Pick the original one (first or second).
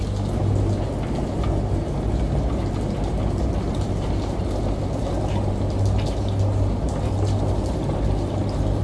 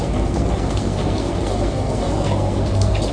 first